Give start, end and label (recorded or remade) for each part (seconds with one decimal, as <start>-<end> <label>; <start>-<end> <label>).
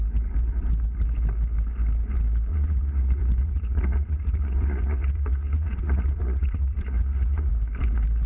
0.0-2.5 recorded; 2.5-7.5 remade; 7.5-8.3 recorded